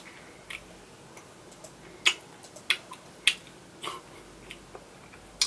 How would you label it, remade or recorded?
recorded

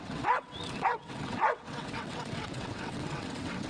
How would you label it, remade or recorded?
remade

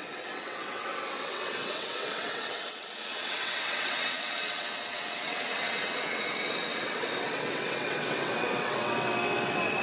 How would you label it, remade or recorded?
remade